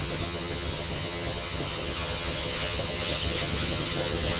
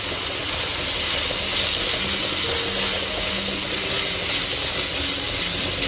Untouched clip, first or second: second